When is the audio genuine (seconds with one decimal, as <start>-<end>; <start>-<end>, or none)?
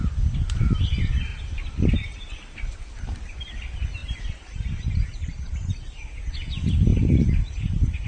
0.0-1.3; 2.3-4.0; 5.8-6.9